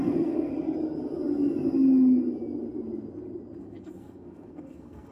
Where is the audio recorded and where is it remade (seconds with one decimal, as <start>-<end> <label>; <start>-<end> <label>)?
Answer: 0.0-0.5 remade; 0.5-3.6 recorded; 3.6-5.1 remade